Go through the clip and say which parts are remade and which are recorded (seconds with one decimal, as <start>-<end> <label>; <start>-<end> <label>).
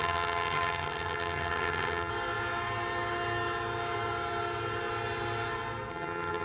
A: 0.0-2.1 remade; 2.1-5.9 recorded; 5.9-6.4 remade